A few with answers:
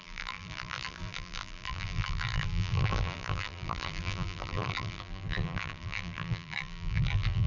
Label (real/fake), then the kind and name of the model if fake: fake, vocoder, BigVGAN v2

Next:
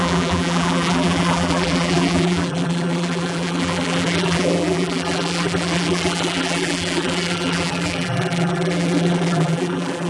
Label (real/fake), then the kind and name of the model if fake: fake, vocoder, BigVGAN v2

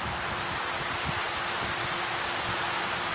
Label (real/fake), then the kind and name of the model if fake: real